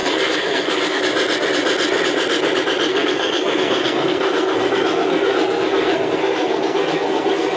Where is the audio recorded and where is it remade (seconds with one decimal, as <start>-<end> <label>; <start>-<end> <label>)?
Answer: 0.0-1.0 remade; 1.0-2.9 recorded; 2.9-7.6 remade